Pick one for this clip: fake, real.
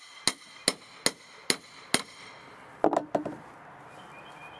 real